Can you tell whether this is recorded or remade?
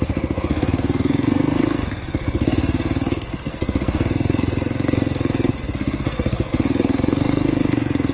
remade